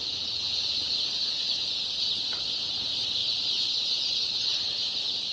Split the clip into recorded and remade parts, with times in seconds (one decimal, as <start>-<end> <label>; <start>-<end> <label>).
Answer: 0.0-3.2 recorded; 3.2-4.8 remade; 4.8-5.3 recorded